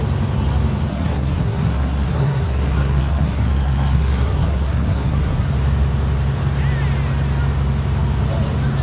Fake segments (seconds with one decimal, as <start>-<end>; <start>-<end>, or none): 0.9-5.5